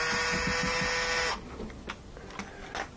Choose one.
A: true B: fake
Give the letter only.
A